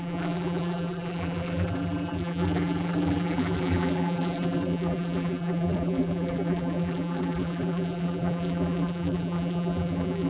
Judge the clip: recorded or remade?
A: remade